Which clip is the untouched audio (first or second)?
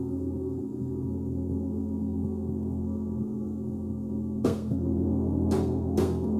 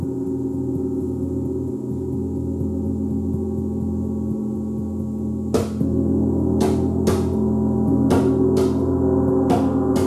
second